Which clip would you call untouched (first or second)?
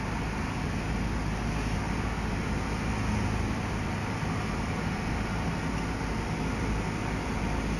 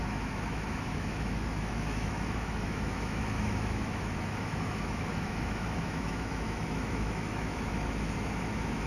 first